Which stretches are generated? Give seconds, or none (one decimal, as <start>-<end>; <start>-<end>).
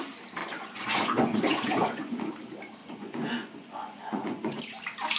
0.4-2.3; 2.8-4.6